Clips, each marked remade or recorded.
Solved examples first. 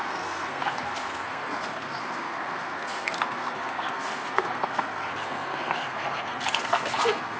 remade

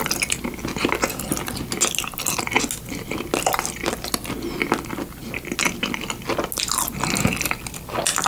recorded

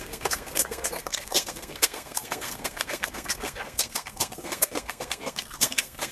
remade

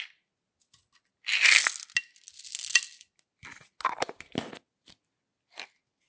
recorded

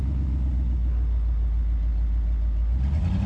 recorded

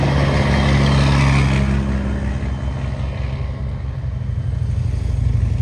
recorded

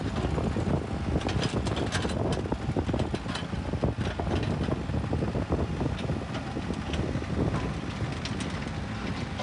recorded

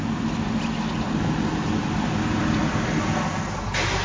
recorded